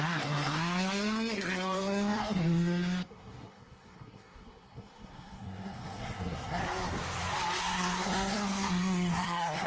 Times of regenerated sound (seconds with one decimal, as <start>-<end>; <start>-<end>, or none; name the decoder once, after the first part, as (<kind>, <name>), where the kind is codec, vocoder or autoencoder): 0.0-6.6 (codec, SNAC); 7.6-9.7